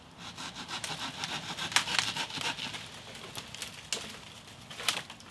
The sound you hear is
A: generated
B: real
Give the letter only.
B